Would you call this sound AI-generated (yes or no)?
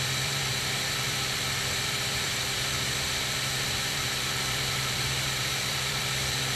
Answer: yes